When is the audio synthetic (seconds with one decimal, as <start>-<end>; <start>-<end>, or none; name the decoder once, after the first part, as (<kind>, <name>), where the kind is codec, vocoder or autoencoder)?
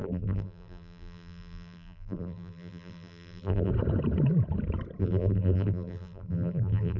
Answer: 0.0-3.7 (vocoder, BigVGAN v2); 5.0-7.0